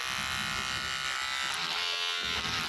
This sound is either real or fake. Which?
real